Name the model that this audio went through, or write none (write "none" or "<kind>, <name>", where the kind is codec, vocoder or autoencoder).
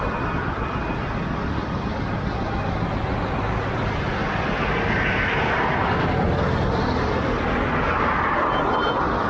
none